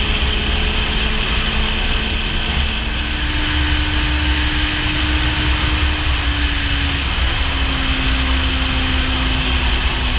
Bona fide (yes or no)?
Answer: yes